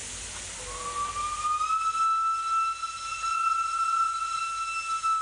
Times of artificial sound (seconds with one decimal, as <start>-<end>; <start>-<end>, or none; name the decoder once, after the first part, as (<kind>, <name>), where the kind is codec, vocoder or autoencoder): 3.1-4.4 (vocoder, Vocos)